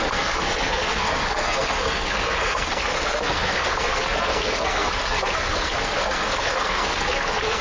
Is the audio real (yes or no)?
no